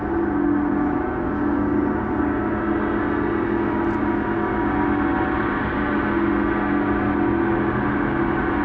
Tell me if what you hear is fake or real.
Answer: real